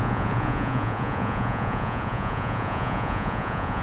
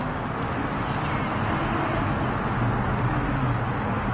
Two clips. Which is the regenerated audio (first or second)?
first